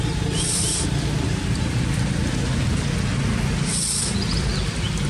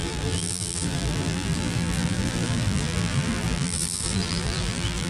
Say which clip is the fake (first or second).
second